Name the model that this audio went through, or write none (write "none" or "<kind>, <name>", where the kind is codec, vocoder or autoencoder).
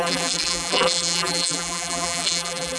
vocoder, BigVGAN v2